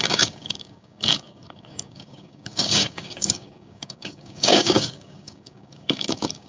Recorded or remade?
remade